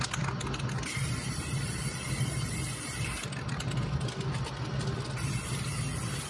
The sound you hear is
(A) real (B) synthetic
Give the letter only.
A